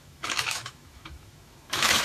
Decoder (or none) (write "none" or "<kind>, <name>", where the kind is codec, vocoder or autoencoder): autoencoder, DAC-VAE